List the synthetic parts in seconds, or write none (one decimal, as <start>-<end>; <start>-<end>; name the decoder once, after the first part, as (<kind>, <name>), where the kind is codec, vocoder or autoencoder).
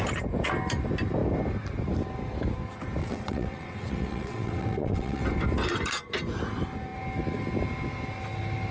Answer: 3.0-5.2 (vocoder, WaveNeXt)